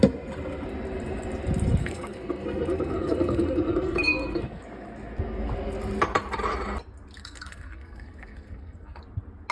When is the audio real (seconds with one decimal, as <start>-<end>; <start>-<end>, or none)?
0.0-1.8; 4.6-7.2; 9.0-9.5